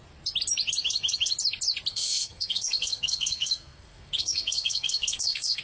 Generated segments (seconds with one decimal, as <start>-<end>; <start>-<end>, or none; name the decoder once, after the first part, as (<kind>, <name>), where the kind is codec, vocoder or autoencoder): 1.9-5.6 (codec, SNAC)